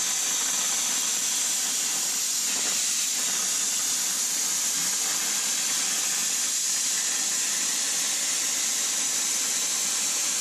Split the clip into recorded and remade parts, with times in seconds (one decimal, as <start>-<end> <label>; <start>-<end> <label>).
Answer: 0.0-10.4 recorded